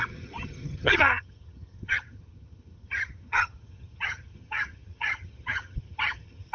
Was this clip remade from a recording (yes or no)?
yes